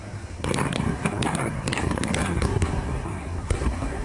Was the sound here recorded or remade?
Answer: remade